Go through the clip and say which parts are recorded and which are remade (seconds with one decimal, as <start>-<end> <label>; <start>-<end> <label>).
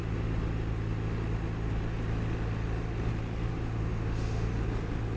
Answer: 0.0-3.5 recorded; 3.5-4.5 remade; 4.5-5.2 recorded